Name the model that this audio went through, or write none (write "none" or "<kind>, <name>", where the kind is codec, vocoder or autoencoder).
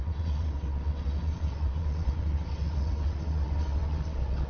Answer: vocoder, WaveNeXt